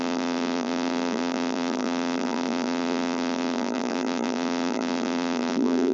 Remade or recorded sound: remade